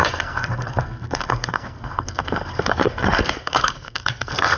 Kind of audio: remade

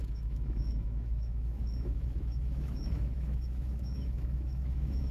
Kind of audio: remade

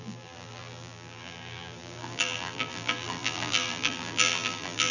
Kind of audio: remade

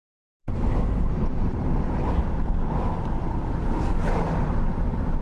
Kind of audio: recorded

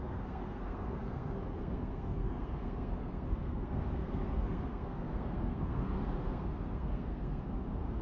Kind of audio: remade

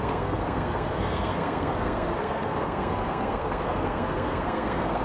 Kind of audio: remade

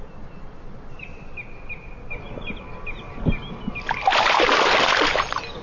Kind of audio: recorded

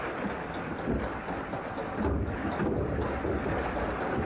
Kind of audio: recorded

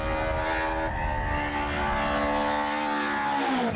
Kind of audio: recorded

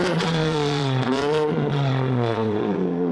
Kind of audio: remade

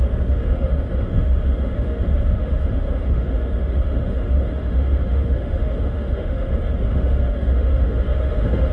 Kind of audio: remade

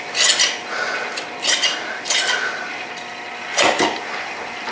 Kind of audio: recorded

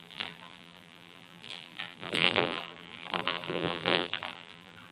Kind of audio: remade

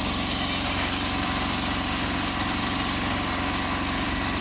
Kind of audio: remade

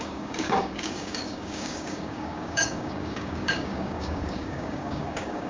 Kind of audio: remade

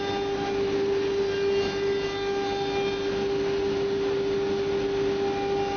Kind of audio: recorded